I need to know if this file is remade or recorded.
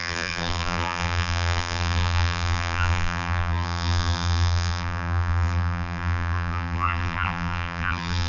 remade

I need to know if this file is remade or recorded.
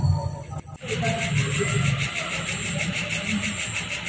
recorded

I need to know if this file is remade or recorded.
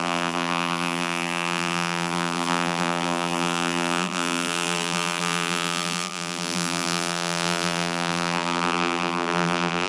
remade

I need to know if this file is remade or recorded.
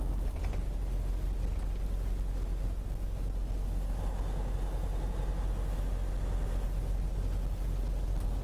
recorded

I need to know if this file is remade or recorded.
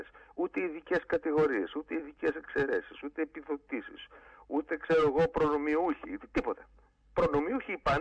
recorded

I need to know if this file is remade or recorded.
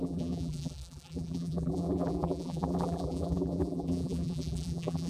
remade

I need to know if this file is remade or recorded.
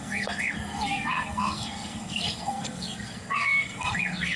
remade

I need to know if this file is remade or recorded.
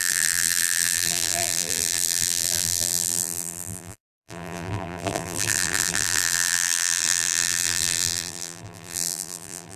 remade